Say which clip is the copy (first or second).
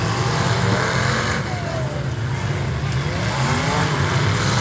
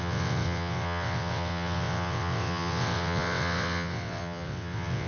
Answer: second